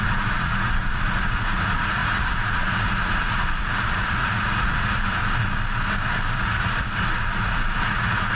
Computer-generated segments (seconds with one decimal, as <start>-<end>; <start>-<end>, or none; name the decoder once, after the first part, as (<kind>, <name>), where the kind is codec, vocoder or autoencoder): 0.0-5.2 (vocoder, Vocos); 6.4-8.3